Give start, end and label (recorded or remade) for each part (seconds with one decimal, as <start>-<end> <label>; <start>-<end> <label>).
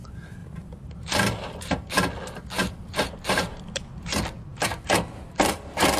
0.0-0.4 recorded; 0.4-2.0 remade; 2.0-2.6 recorded; 2.6-4.1 remade; 4.1-4.5 recorded; 4.5-5.6 remade; 5.6-6.0 recorded